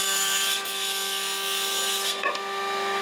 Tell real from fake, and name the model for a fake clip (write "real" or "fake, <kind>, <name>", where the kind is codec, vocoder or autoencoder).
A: fake, codec, SNAC